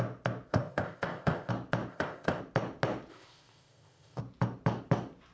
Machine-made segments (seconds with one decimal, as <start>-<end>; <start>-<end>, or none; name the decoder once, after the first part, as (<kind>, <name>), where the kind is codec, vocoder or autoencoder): 0.5-1.5 (codec, ZipCodec); 1.9-2.4; 3.1-4.2